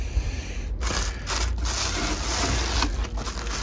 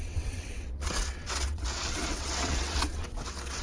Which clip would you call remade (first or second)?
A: second